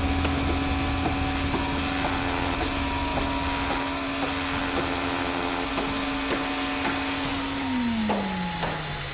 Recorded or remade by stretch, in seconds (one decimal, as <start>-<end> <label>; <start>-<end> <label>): 0.0-9.1 recorded